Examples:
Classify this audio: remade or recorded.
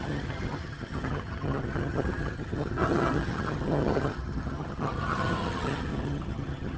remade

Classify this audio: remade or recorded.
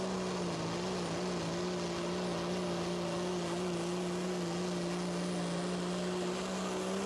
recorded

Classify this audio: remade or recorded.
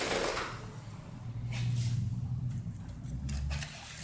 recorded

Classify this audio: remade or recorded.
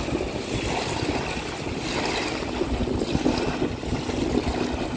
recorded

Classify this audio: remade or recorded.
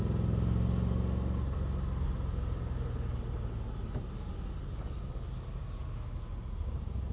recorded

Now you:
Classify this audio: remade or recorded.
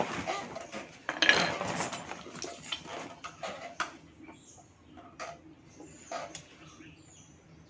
recorded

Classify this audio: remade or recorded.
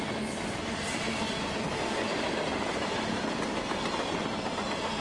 recorded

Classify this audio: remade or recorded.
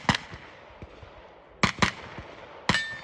recorded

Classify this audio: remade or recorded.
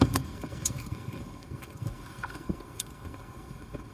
remade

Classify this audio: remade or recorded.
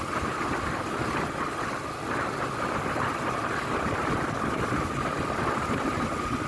recorded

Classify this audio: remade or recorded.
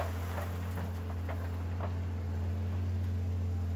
recorded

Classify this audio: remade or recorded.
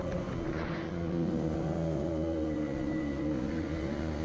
remade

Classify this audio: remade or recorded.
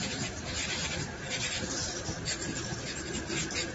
remade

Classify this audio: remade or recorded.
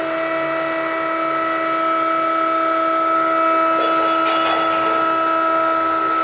recorded